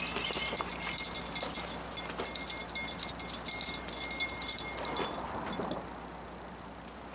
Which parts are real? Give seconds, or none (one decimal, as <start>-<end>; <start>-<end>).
0.0-7.1